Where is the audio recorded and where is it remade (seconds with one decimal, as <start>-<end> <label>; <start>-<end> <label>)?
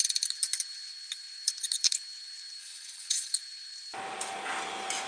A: 0.0-2.6 recorded; 2.6-3.3 remade; 3.3-5.1 recorded